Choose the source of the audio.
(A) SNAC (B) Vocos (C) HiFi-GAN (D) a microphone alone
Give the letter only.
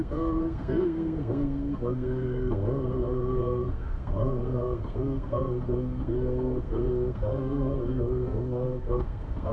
A